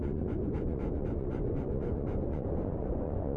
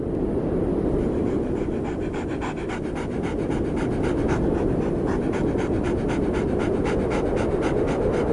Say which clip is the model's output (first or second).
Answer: first